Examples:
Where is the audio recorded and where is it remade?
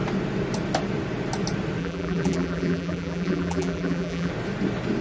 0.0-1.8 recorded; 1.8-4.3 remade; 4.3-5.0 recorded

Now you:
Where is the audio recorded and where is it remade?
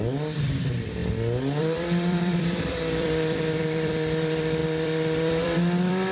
0.0-1.0 remade; 1.0-1.6 recorded; 1.6-6.1 remade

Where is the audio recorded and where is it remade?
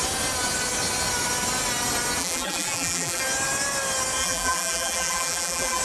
0.0-2.2 recorded; 2.2-3.2 remade; 3.2-4.2 recorded; 4.2-5.8 remade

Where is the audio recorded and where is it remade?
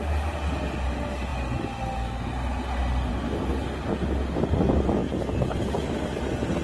0.0-6.6 recorded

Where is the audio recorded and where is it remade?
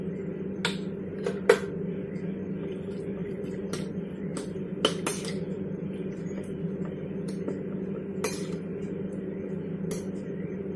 0.0-3.2 recorded; 3.2-3.9 remade; 3.9-10.8 recorded